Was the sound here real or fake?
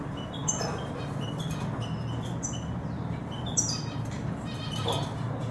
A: fake